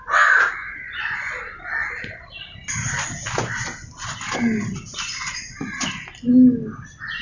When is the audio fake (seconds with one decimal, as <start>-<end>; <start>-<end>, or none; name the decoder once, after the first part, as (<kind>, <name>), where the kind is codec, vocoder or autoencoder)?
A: 0.6-1.3 (vocoder, Vocos)